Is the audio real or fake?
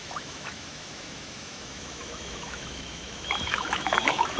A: fake